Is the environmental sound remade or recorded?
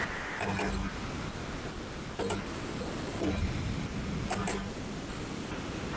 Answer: recorded